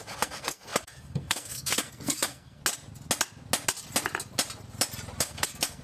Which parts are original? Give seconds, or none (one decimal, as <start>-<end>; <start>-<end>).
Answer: 2.6-5.2